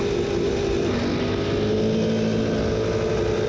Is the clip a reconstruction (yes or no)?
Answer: no